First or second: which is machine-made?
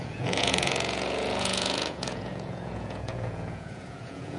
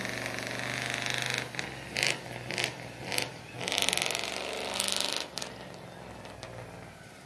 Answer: first